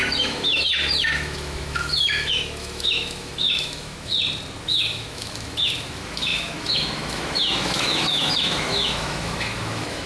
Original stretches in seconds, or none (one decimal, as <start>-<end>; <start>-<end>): 4.1-4.6